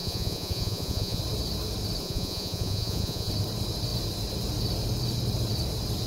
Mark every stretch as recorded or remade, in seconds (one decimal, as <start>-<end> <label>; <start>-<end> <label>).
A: 0.0-1.2 remade; 1.2-2.0 recorded; 2.0-3.3 remade; 3.3-6.1 recorded

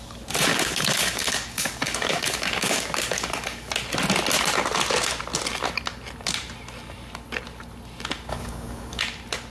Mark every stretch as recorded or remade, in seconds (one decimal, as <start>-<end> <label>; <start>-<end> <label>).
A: 0.0-0.5 recorded; 0.5-3.7 remade; 3.7-8.3 recorded; 8.3-9.0 remade; 9.0-9.5 recorded